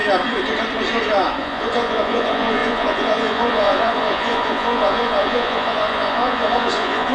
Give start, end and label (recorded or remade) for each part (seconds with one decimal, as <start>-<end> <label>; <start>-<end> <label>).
0.0-1.4 recorded; 1.4-7.1 remade